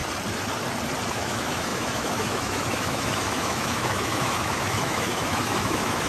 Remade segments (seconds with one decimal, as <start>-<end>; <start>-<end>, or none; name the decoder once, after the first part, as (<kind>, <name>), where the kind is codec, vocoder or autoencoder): 1.1-6.1 (autoencoder, DAC-VAE)